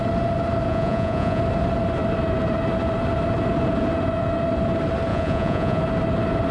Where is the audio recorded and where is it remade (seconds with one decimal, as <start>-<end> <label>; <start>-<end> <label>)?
0.0-0.7 recorded; 0.7-1.4 remade; 1.4-5.1 recorded; 5.1-5.8 remade; 5.8-6.5 recorded